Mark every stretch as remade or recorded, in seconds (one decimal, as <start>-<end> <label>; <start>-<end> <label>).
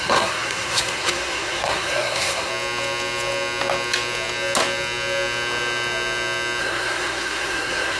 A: 0.0-2.5 remade; 2.5-6.6 recorded; 6.6-8.0 remade